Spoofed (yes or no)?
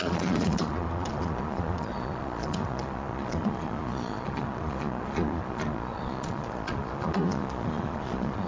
yes